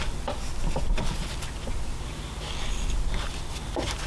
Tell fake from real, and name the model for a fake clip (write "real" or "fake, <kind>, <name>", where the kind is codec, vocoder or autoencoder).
real